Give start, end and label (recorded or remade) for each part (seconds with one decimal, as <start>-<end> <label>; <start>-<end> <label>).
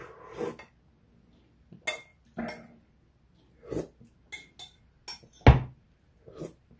0.0-6.8 recorded